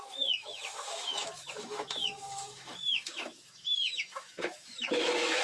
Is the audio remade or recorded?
remade